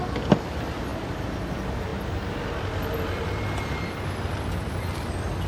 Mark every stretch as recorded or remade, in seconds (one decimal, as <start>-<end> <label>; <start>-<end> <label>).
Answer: 0.0-0.5 recorded; 0.5-1.9 remade; 1.9-4.9 recorded; 4.9-5.5 remade

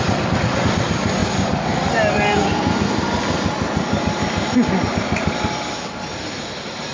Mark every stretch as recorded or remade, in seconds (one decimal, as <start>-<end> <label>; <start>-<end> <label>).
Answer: 0.0-6.9 recorded

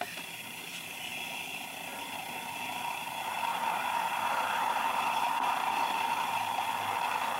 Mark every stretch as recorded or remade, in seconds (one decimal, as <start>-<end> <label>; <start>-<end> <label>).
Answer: 0.0-3.5 recorded; 3.5-6.5 remade; 6.5-7.4 recorded

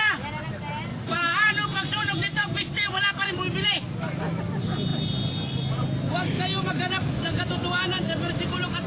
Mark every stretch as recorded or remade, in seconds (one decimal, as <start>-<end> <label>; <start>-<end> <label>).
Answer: 0.0-0.9 recorded; 0.9-1.5 remade; 1.5-8.9 recorded